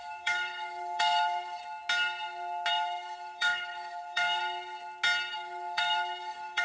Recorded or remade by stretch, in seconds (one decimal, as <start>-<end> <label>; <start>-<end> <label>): 0.0-1.6 remade; 1.6-2.7 recorded; 2.7-4.4 remade; 4.4-5.3 recorded; 5.3-6.6 remade

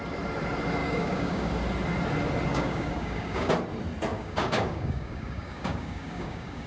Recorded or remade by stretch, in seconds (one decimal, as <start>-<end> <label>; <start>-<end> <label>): 0.0-0.8 recorded; 0.8-1.5 remade; 1.5-2.5 recorded; 2.5-3.5 remade; 3.5-4.1 recorded; 4.1-6.7 remade

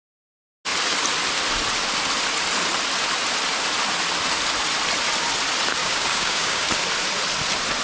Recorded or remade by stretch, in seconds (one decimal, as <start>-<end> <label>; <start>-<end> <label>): 0.0-5.8 recorded; 5.8-6.7 remade; 6.7-7.8 recorded

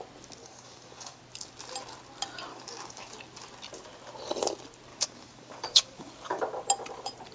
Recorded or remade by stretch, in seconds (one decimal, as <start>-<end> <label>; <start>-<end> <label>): 0.0-0.4 recorded; 0.4-1.2 remade; 1.2-2.5 recorded; 2.5-3.1 remade; 3.1-4.9 recorded; 4.9-6.4 remade; 6.4-7.3 recorded